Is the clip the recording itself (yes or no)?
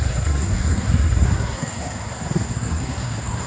no